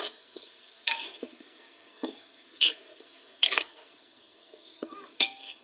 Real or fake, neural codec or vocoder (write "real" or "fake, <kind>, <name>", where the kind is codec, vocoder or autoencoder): fake, codec, SNAC